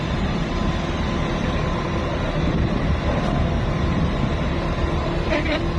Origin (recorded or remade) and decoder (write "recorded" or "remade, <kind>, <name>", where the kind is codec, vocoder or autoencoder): remade, vocoder, BigVGAN v2